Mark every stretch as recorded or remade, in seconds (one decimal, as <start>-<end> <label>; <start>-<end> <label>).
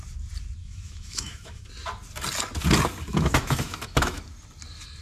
0.0-0.6 recorded; 0.6-1.7 remade; 1.7-3.1 recorded; 3.1-4.2 remade; 4.2-5.0 recorded